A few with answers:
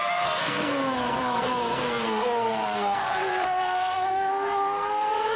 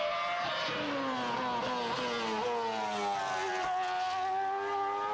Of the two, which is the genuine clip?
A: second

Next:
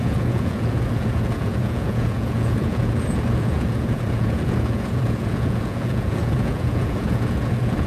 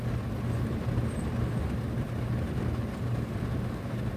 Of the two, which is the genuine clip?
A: second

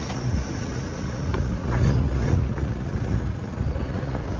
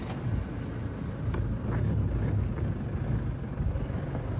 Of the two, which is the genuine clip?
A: second